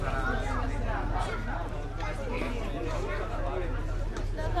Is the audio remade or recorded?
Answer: recorded